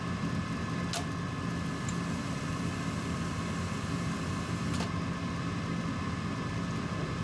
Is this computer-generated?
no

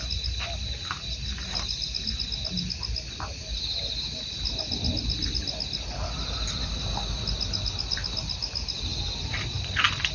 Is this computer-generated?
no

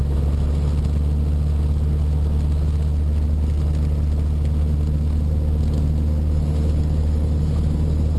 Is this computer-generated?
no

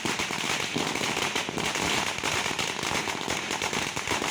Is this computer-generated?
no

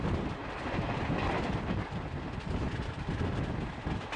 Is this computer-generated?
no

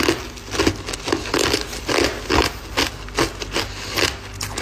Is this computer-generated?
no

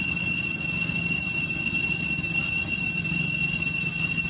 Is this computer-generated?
no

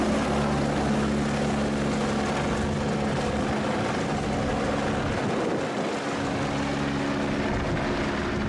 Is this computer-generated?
no